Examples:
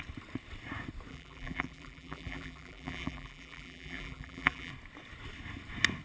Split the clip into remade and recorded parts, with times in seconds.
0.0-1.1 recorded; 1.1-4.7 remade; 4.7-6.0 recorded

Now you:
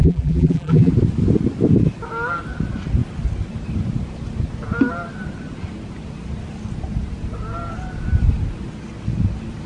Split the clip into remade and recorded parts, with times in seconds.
0.0-0.9 remade; 0.9-9.7 recorded